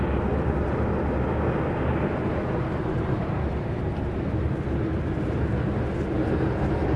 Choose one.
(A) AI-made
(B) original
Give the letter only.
B